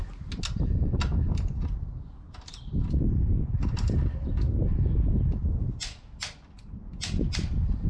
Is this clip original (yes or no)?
yes